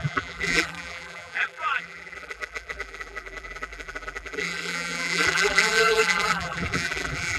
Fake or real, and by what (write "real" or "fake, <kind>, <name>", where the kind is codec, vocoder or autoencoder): fake, vocoder, BigVGAN v2